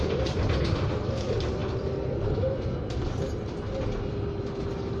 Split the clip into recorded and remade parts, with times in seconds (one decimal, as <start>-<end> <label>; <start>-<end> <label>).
0.0-5.0 recorded